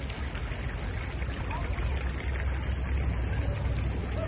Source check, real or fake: real